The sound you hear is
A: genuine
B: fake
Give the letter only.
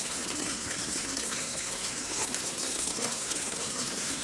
B